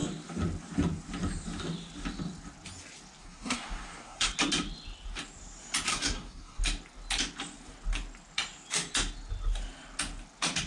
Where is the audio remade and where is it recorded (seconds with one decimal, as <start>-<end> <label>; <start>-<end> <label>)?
0.0-3.2 recorded; 3.2-4.3 remade; 4.3-5.9 recorded; 5.9-6.6 remade; 6.6-10.7 recorded